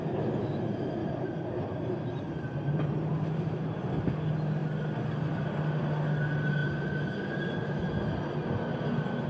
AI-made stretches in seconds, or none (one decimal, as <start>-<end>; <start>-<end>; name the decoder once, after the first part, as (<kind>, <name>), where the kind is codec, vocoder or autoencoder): 1.0-3.1 (vocoder, BigVGAN v2)